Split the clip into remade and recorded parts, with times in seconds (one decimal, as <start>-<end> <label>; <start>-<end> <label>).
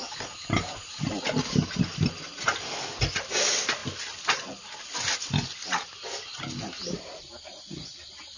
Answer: 0.0-8.4 recorded